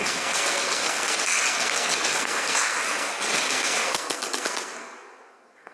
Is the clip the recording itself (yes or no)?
no